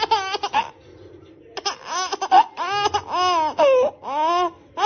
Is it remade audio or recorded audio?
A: recorded